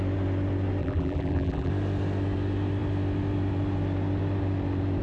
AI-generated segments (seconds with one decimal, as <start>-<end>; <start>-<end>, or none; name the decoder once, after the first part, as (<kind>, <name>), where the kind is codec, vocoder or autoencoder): 0.8-1.7 (vocoder, BigVGAN v2)